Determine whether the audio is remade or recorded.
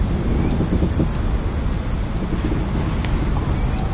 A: recorded